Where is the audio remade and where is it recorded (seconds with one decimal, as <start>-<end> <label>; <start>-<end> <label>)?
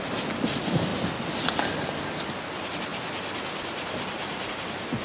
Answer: 0.0-5.0 recorded